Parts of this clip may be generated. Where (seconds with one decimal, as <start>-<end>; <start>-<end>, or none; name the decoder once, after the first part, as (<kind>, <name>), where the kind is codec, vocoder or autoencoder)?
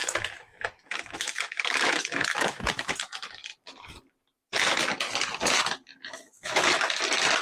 0.0-2.9 (autoencoder, DAC-VAE); 5.9-7.0